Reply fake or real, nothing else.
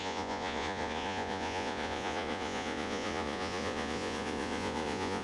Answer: fake